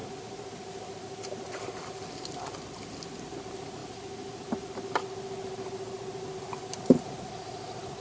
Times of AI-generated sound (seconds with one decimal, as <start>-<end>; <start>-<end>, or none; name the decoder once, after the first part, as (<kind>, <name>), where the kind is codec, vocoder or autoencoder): 0.0-2.5 (vocoder, BigVGAN v2)